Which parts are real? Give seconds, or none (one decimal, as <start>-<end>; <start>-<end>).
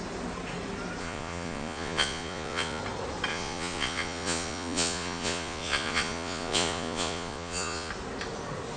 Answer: 0.0-1.0; 2.8-3.3; 7.9-8.8